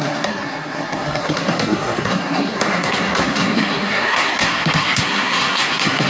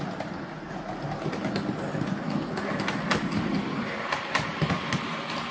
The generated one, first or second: first